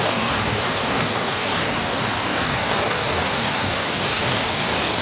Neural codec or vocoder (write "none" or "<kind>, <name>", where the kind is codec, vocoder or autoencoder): codec, DAC